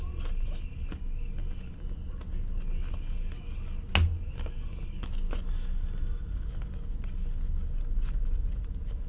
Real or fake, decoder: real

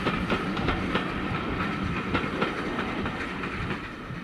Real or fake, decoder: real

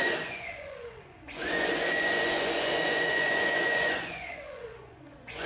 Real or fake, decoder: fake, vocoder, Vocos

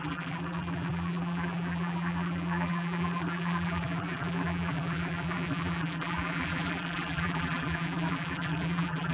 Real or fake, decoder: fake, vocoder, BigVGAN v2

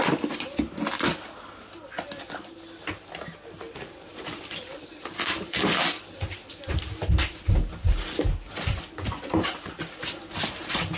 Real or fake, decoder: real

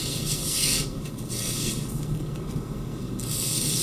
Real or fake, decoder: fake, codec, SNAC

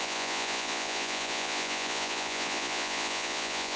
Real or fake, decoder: fake, vocoder, Vocos